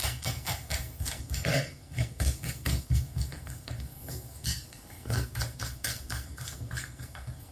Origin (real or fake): fake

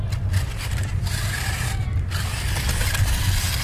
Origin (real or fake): real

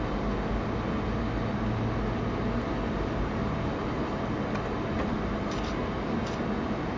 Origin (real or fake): real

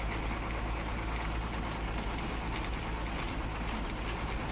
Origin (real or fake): real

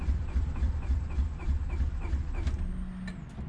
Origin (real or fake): real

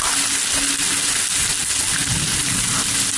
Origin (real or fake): real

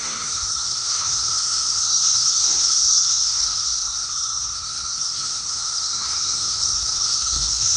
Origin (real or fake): fake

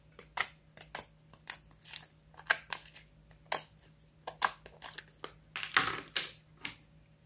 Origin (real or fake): real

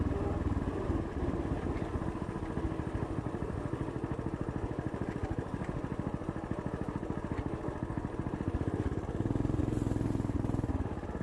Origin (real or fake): real